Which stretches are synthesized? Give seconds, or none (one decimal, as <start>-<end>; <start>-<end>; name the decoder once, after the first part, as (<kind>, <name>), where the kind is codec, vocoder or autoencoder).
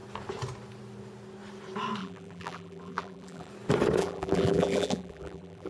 2.0-3.5 (vocoder, BigVGAN v2); 4.0-5.7